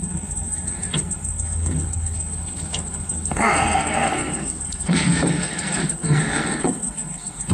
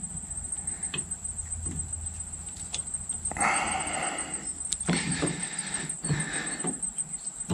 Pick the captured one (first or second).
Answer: second